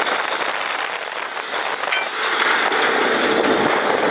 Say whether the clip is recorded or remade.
recorded